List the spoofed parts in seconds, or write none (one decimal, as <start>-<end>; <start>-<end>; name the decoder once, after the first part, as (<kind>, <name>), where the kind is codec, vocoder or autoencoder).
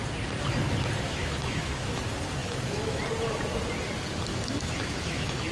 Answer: 1.1-2.0 (autoencoder, DAC-VAE); 2.4-3.0; 4.3-5.5